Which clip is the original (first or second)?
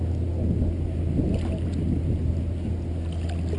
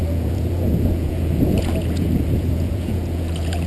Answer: first